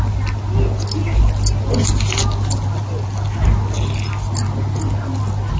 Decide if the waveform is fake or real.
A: real